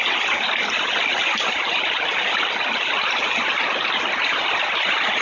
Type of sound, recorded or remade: recorded